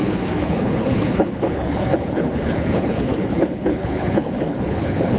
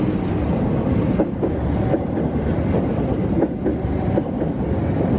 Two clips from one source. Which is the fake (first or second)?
first